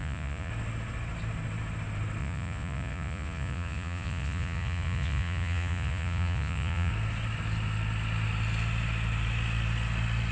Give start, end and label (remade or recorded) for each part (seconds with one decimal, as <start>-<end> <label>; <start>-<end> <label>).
0.0-0.5 remade; 0.5-2.2 recorded; 2.2-6.9 remade; 6.9-10.3 recorded